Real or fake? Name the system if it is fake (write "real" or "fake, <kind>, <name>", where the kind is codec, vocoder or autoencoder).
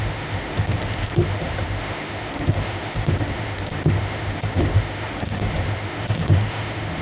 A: fake, autoencoder, DAC-VAE